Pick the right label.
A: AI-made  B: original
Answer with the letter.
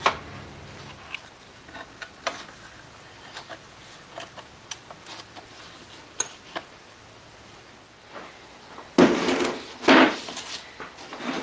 B